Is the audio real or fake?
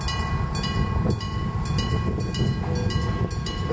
real